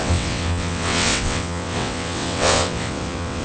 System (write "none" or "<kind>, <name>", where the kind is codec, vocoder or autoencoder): vocoder, WaveNeXt